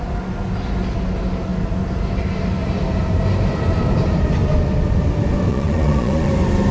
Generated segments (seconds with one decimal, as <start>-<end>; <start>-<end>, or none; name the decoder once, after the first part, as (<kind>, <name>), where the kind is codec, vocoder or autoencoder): 5.5-6.3 (vocoder, Vocos)